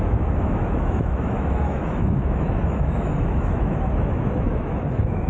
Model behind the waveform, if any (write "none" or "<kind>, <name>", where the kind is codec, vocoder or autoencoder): autoencoder, DAC-VAE